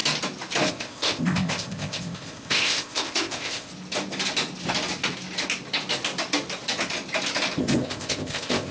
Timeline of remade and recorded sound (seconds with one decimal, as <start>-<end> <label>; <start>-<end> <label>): 0.0-0.7 recorded; 0.7-3.7 remade; 3.7-7.6 recorded; 7.6-8.7 remade